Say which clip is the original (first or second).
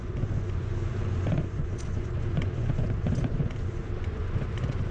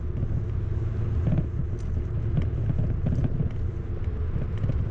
second